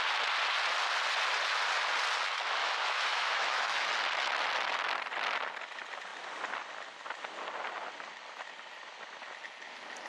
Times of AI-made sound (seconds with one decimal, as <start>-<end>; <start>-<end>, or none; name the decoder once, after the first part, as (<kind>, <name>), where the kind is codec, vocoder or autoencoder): 2.6-3.9 (autoencoder, DAC-VAE)